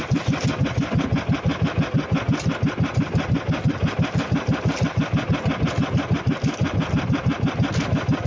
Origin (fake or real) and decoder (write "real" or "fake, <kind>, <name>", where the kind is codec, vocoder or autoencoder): real